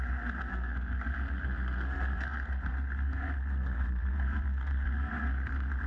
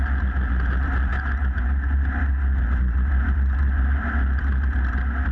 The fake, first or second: first